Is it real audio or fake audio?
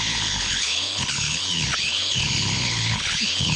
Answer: fake